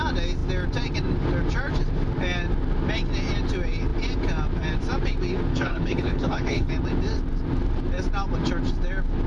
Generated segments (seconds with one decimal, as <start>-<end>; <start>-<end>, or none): 5.5-6.7